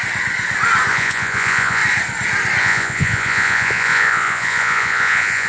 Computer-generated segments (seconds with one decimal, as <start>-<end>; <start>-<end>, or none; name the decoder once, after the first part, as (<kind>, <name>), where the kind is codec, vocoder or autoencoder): 0.9-1.8 (vocoder, Vocos); 2.6-5.5

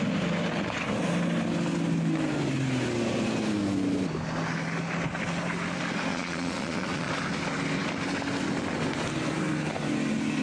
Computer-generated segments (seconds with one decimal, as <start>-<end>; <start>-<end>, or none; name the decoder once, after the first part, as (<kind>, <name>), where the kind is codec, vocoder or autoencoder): 6.1-7.1 (vocoder, Vocos)